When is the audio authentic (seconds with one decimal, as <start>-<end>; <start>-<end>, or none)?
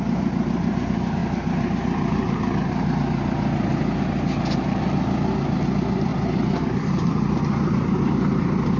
0.0-6.1; 8.1-8.8